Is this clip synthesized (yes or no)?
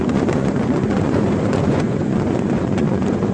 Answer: yes